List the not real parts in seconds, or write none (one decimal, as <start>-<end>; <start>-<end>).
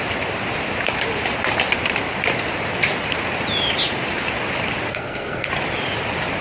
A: 4.9-5.5